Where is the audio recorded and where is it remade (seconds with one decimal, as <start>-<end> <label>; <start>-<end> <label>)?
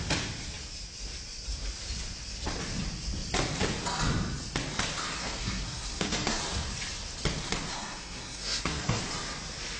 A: 0.0-5.2 recorded; 5.2-6.4 remade; 6.4-7.7 recorded; 7.7-9.0 remade; 9.0-9.8 recorded